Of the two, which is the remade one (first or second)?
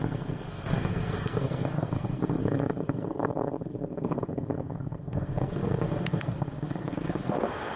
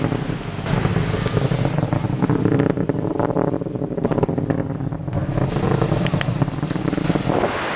first